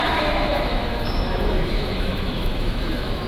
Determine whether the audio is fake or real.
fake